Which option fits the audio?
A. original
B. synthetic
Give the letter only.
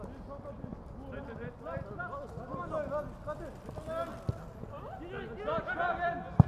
A